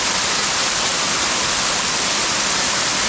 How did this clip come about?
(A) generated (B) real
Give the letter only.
B